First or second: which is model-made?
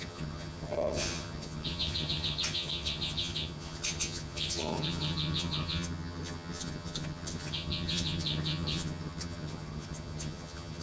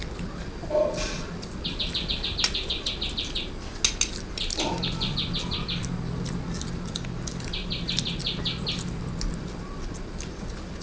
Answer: first